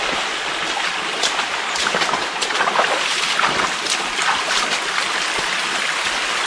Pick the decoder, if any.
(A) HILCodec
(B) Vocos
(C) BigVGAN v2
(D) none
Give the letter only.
D